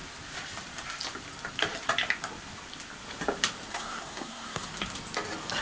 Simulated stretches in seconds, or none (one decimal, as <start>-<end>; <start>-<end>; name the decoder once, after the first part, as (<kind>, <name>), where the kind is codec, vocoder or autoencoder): 3.7-4.7 (codec, SNAC)